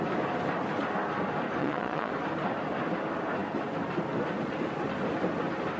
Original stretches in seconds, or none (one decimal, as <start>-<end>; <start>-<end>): 0.0-1.6; 2.1-5.8